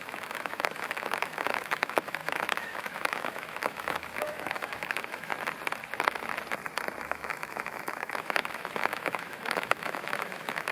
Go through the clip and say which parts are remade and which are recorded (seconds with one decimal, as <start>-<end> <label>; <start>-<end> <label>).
0.0-5.3 remade; 5.3-7.0 recorded; 7.0-10.7 remade